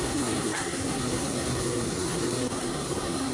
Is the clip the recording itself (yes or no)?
no